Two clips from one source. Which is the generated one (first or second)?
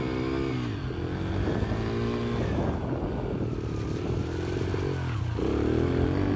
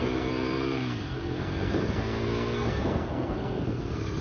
second